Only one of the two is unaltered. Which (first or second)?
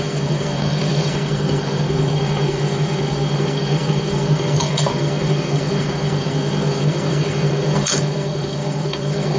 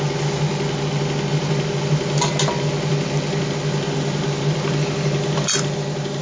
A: second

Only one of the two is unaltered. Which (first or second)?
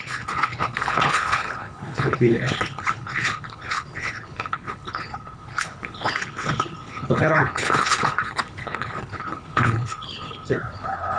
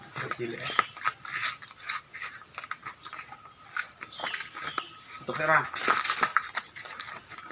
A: second